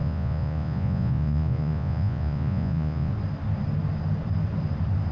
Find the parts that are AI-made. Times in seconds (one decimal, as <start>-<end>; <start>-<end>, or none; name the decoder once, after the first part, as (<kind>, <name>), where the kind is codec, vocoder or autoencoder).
0.0-3.1 (vocoder, Vocos)